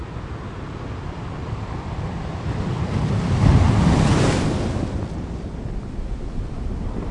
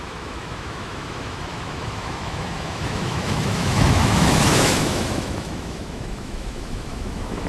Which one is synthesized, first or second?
second